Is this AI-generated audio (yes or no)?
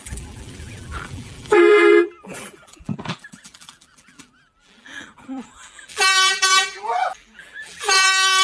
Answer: yes